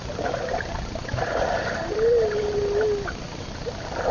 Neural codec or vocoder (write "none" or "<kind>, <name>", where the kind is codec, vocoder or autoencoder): none